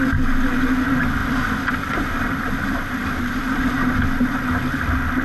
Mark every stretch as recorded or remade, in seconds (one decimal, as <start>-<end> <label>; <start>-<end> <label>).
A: 0.0-1.2 recorded; 1.2-3.7 remade; 3.7-5.2 recorded

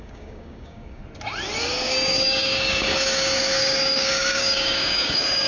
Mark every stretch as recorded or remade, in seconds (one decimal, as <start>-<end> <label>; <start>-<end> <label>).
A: 0.0-1.0 remade; 1.0-1.6 recorded; 1.6-5.5 remade

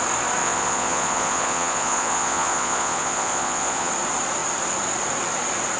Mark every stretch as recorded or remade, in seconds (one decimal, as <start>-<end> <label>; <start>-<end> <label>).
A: 0.0-0.4 recorded; 0.4-3.9 remade; 3.9-5.8 recorded

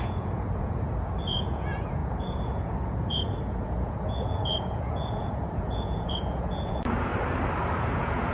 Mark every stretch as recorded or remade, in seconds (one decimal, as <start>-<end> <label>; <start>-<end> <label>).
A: 0.0-7.1 remade; 7.1-7.8 recorded; 7.8-8.3 remade

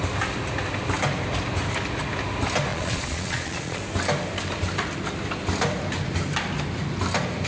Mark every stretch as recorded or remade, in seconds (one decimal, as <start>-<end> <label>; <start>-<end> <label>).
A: 0.0-2.7 recorded; 2.7-3.8 remade; 3.8-7.5 recorded

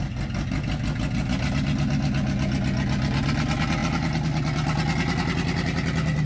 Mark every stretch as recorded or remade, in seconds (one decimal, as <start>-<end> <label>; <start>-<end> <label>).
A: 0.0-6.3 recorded